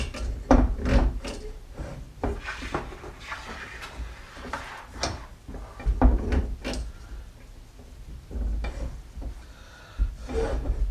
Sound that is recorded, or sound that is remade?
recorded